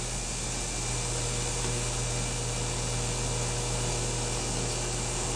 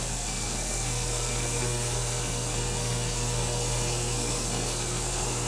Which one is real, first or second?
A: first